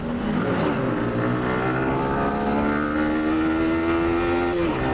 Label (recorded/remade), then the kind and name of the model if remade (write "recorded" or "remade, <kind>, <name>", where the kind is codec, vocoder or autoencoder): recorded